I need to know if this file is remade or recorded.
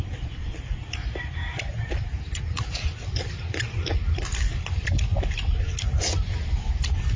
recorded